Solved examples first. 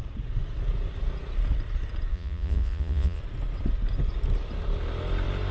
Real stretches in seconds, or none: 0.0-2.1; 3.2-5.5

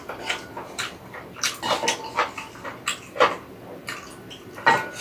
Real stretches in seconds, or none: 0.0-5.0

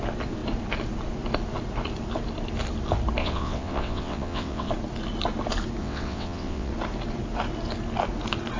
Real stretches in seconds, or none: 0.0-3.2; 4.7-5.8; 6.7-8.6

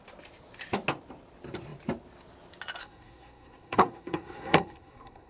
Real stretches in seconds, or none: 0.0-2.8

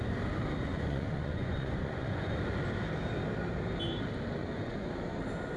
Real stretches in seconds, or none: 0.0-0.7; 2.4-4.4; 4.9-5.6